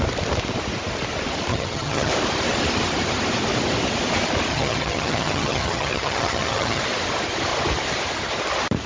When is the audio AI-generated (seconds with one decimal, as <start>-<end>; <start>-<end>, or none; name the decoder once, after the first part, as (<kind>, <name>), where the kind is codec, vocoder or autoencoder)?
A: 1.5-2.1 (vocoder, HiFi-GAN); 4.5-6.8